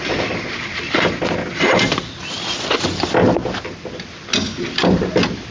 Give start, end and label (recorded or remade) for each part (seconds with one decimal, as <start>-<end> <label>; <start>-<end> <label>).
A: 0.0-5.5 recorded